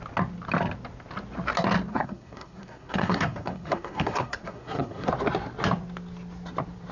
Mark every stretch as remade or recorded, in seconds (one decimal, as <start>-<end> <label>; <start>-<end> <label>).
0.0-1.9 recorded; 1.9-5.1 remade; 5.1-6.9 recorded